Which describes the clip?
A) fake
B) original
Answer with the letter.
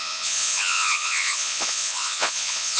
A